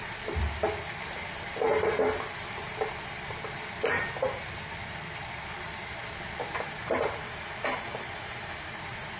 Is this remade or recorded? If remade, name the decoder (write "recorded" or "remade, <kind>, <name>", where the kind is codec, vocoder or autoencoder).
remade, vocoder, BigVGAN v2